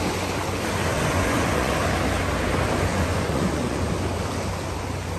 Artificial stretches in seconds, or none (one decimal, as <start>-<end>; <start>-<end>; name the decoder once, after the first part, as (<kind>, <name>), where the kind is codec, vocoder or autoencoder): 0.9-1.8 (vocoder, Vocos); 2.9-3.9